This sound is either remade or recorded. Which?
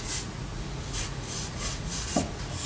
remade